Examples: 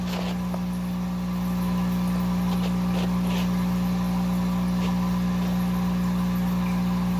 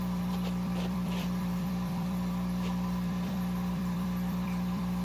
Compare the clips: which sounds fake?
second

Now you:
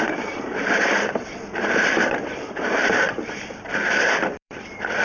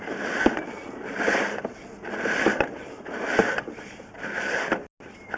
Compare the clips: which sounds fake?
first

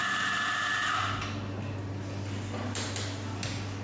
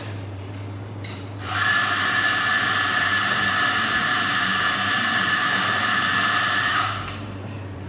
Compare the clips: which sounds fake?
second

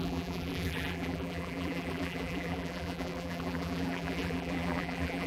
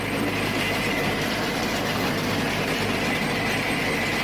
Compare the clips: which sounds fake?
first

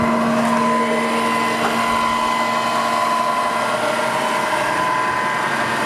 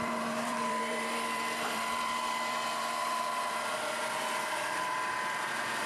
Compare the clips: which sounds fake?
second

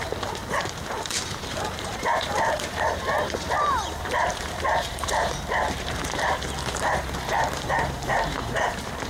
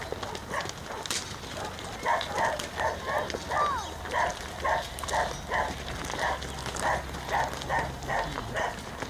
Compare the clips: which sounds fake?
first